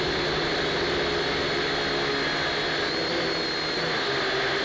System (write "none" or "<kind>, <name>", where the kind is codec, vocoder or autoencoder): none